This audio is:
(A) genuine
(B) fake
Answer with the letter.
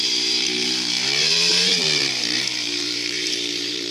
B